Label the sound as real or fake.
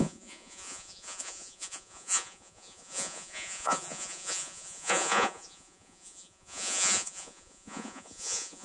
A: fake